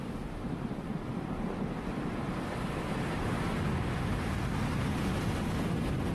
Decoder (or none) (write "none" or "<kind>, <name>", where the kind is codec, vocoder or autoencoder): none